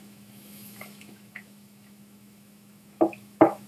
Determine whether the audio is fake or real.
fake